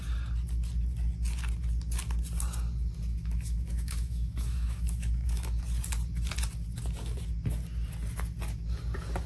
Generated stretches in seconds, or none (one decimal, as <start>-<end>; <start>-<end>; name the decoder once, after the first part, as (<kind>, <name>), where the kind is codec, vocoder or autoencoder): 3.1-5.6 (autoencoder, DAC-VAE)